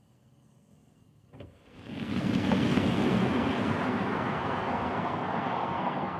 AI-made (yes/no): yes